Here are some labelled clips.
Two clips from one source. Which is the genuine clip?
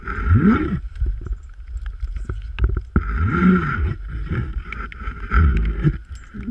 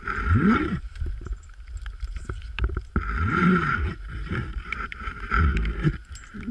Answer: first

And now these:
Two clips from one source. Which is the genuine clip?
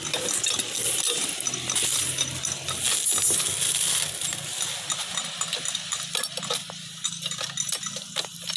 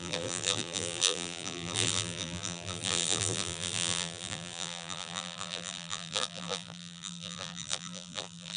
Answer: first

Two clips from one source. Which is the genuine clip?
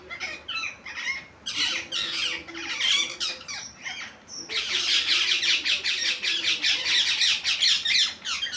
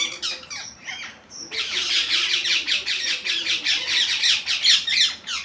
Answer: first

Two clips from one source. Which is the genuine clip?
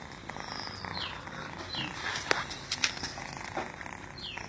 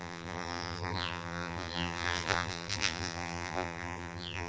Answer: first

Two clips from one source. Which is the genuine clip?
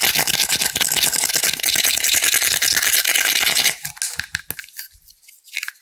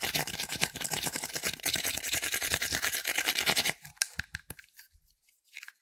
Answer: first